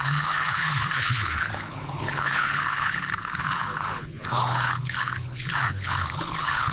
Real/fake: fake